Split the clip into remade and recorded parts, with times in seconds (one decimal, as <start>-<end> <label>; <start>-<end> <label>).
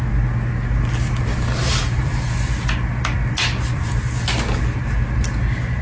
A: 0.0-1.6 recorded; 1.6-2.3 remade; 2.3-5.8 recorded